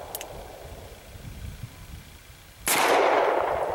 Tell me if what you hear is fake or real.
real